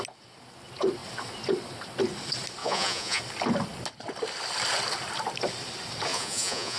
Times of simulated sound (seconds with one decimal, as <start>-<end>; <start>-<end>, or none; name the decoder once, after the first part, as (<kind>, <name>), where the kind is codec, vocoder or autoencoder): 2.6-3.2 (vocoder, Vocos); 6.1-6.8